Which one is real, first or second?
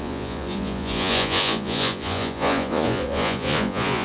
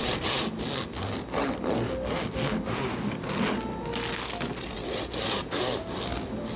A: second